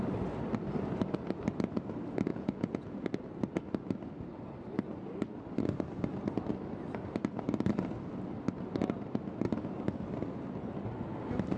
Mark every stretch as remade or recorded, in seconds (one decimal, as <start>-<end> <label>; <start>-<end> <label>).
0.0-2.3 recorded; 2.3-3.0 remade; 3.0-11.6 recorded